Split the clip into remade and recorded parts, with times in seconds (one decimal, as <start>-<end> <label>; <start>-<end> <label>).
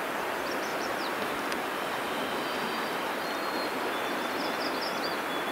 0.0-0.7 recorded; 0.7-2.0 remade; 2.0-5.5 recorded